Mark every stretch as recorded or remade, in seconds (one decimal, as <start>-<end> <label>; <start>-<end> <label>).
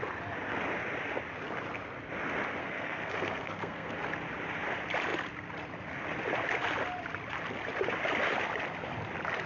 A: 0.0-2.6 recorded; 2.6-3.9 remade; 3.9-9.5 recorded